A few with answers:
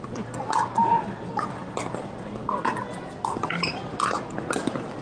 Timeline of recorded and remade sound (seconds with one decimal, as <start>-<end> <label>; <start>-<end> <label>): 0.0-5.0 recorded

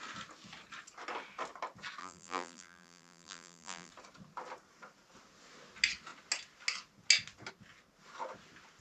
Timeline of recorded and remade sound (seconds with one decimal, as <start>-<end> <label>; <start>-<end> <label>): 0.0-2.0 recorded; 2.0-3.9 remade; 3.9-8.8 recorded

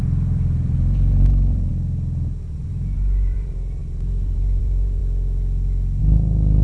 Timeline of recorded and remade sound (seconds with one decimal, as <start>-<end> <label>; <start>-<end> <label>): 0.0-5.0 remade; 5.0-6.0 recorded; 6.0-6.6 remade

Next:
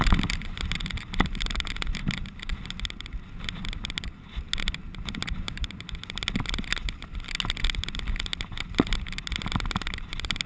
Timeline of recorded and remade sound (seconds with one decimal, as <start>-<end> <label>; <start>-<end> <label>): 0.0-10.5 recorded

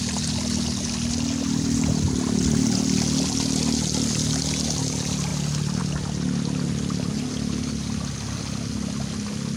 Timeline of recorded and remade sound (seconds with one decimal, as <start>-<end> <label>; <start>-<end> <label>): 0.0-9.6 recorded

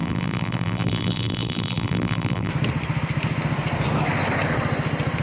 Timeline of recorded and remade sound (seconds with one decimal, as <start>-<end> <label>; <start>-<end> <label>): 0.0-2.5 remade; 2.5-5.2 recorded

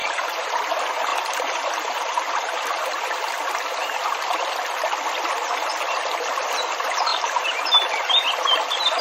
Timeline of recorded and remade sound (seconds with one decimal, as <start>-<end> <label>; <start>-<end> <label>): 0.0-0.5 remade; 0.5-1.1 recorded; 1.1-2.8 remade; 2.8-7.1 recorded; 7.1-7.6 remade; 7.6-9.0 recorded

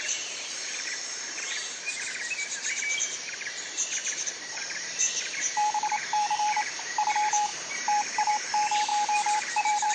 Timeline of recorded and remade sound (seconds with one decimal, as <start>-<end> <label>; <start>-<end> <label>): 0.0-9.9 remade